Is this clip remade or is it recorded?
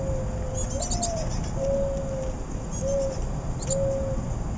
recorded